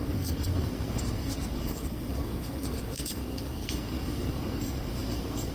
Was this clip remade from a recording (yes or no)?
yes